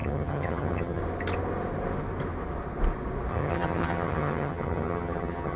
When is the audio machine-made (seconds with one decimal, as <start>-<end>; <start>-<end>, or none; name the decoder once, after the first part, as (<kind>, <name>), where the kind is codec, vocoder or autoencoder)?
0.0-1.0 (vocoder, HiFi-GAN); 3.3-5.6